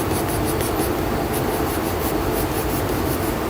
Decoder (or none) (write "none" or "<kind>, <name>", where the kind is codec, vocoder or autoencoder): none